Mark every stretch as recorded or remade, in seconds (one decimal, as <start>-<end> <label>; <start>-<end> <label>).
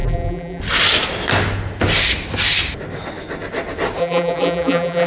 0.0-0.6 remade; 0.6-4.0 recorded; 4.0-5.1 remade